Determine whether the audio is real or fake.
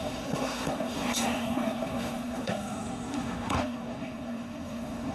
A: fake